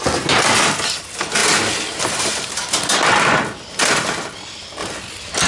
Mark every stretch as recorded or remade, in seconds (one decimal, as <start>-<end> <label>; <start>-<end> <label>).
0.0-5.5 recorded